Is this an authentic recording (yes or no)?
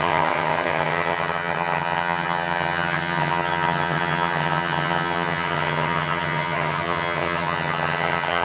no